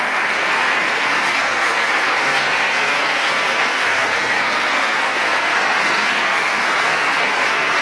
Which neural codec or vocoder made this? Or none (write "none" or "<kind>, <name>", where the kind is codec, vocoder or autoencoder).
codec, SNAC